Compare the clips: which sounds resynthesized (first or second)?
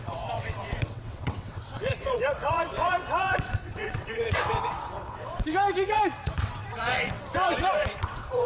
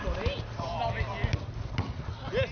first